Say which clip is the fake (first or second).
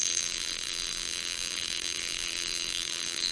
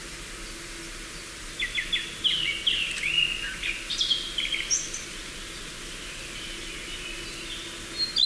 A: first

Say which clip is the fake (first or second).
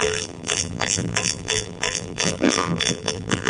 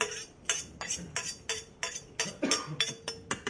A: first